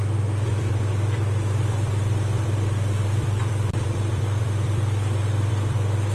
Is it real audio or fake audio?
fake